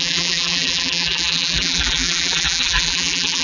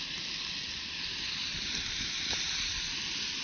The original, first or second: second